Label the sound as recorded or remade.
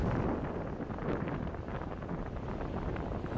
recorded